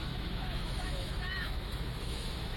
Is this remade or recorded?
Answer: remade